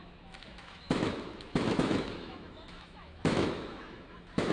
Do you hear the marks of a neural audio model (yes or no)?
yes